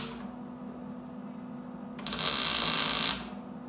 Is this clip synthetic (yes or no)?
no